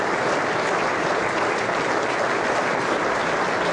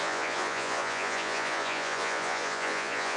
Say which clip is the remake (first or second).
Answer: second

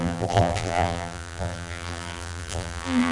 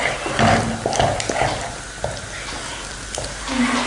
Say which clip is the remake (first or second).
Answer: first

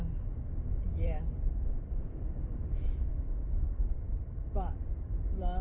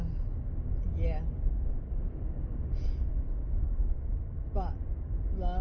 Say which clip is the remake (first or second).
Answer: first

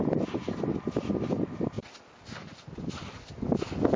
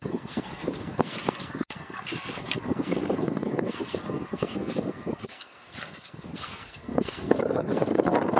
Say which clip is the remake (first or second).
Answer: second